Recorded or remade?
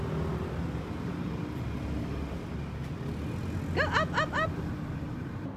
recorded